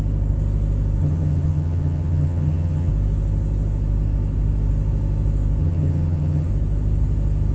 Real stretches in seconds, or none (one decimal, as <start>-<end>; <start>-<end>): 0.0-1.0; 2.9-5.6; 6.5-7.5